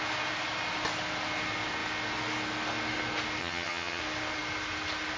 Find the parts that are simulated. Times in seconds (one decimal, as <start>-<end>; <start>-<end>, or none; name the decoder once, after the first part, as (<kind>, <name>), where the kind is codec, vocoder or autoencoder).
3.4-4.0 (vocoder, HiFi-GAN)